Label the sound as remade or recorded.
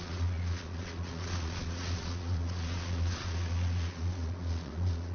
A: remade